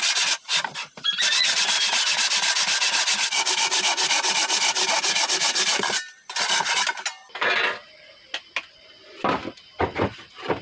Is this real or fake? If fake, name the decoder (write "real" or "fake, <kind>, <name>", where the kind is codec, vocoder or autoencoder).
real